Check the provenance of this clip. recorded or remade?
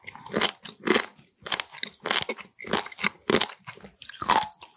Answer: recorded